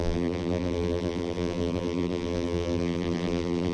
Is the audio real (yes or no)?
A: no